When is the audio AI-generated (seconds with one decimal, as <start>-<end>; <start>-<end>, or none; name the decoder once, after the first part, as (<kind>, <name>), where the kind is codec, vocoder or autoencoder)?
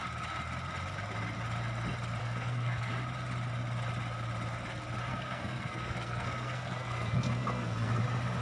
2.2-2.9 (codec, SNAC); 5.1-8.0